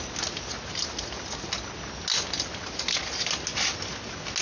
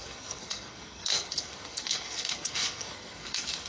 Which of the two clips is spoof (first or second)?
second